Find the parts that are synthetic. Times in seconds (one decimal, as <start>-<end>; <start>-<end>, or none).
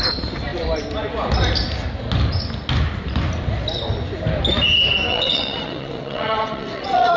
5.1-7.2